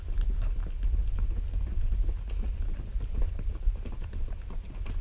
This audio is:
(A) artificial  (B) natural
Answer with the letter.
B